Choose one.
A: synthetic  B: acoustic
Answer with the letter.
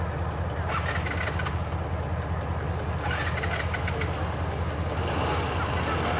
B